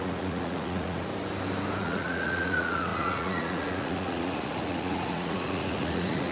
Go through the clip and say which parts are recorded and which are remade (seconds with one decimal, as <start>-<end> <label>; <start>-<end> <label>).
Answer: 0.0-1.1 remade; 1.1-1.8 recorded; 1.8-6.3 remade